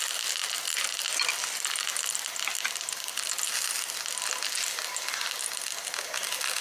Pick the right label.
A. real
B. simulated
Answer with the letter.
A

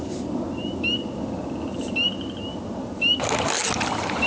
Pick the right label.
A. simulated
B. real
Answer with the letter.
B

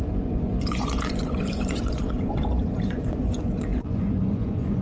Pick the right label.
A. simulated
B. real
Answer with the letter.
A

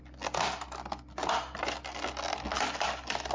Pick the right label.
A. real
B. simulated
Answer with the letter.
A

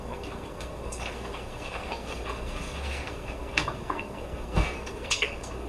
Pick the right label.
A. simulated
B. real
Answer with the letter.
A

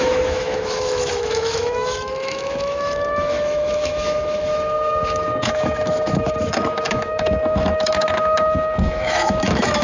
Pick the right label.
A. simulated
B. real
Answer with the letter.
A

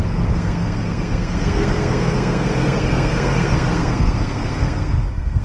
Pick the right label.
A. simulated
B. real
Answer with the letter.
A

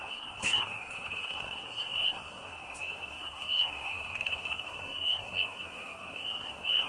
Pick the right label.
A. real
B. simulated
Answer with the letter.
B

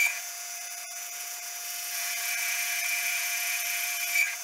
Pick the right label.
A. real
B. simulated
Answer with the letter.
B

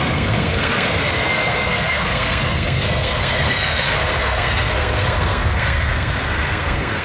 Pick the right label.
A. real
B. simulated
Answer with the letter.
B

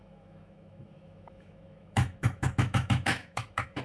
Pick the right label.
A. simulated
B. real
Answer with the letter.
A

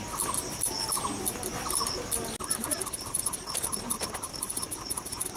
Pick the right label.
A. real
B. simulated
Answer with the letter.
A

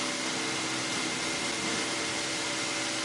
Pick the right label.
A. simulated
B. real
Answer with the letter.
B